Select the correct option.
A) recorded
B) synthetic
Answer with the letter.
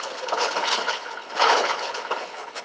B